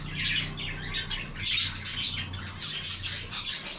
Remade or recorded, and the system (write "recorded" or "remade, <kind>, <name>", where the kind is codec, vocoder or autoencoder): recorded